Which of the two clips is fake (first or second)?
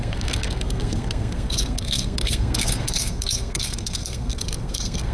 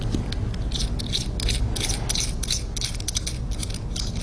first